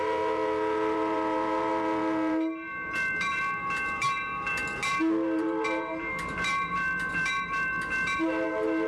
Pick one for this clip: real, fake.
fake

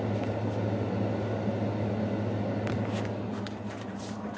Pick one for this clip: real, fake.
real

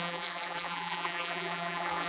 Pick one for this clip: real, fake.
fake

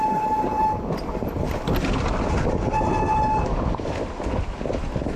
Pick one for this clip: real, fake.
real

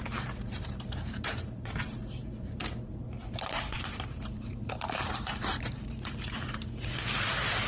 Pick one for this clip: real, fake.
fake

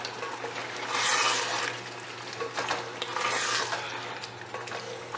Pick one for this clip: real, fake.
real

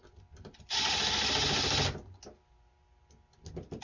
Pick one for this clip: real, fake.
real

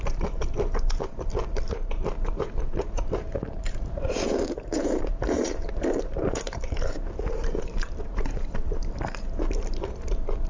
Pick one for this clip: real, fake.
fake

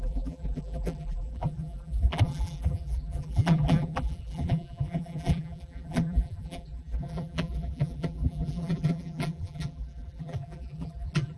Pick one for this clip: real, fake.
fake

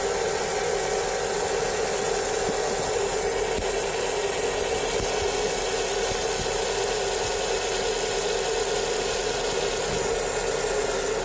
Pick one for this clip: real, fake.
real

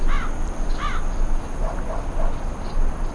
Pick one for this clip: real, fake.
real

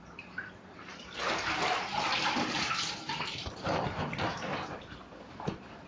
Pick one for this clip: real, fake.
fake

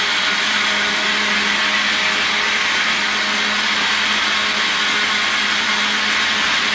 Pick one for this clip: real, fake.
real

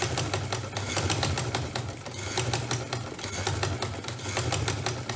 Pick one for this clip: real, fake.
real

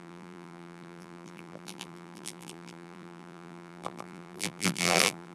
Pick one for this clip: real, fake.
fake